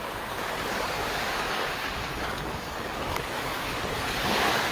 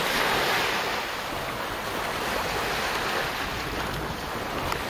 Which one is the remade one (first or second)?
first